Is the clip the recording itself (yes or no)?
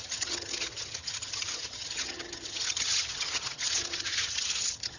no